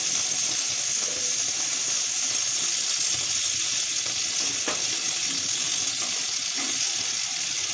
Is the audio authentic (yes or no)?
yes